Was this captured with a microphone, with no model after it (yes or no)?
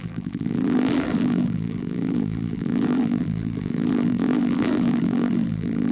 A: no